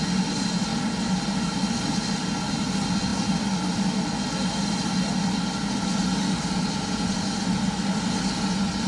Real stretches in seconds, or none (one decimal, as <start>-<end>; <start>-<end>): 0.0-8.9